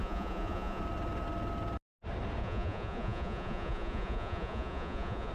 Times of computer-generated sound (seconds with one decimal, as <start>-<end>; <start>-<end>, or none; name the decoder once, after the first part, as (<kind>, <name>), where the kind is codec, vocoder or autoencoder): 0.0-0.8 (vocoder, Vocos); 2.4-5.3